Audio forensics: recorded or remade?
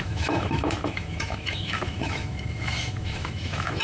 remade